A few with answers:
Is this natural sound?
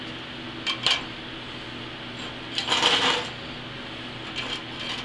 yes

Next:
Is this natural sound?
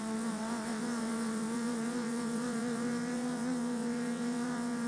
no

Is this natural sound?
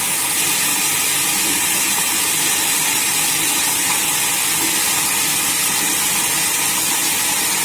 yes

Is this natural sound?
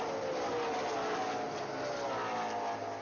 yes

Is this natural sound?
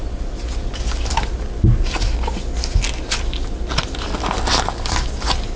yes